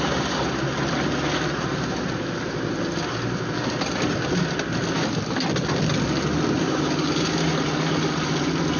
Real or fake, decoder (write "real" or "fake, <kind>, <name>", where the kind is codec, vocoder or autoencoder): real